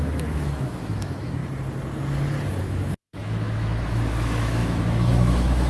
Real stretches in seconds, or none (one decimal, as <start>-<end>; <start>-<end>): 1.4-2.6